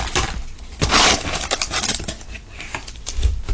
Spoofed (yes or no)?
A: no